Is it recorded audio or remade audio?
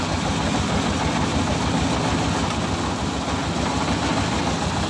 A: recorded